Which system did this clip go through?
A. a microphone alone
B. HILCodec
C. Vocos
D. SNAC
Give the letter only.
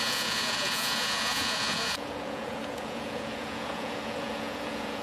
C